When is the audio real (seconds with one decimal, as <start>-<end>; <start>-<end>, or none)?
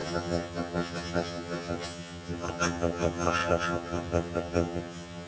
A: none